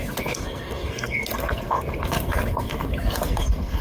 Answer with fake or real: fake